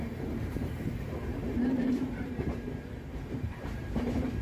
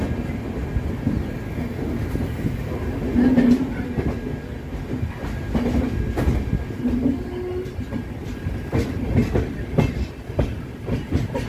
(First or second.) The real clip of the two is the second